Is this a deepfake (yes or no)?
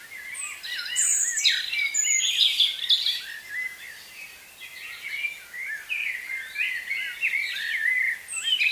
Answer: no